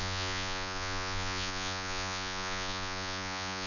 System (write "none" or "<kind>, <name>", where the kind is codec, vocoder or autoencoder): vocoder, Vocos